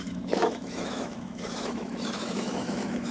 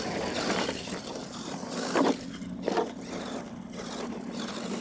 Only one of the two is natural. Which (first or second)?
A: second